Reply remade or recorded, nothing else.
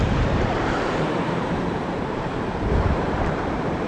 remade